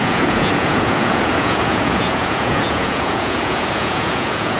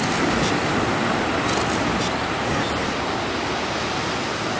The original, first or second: second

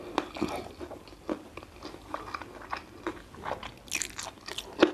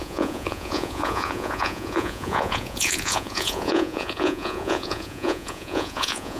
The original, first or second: first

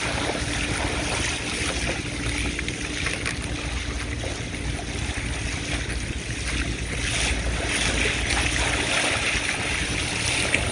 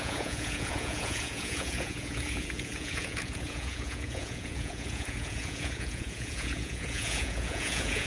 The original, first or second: first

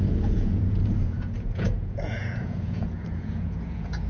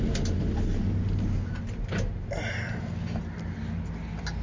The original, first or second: second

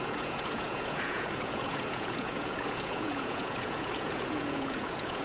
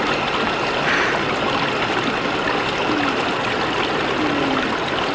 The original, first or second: second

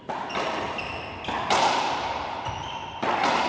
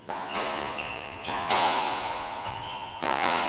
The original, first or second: first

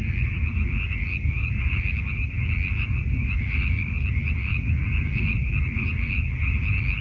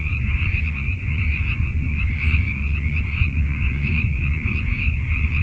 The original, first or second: first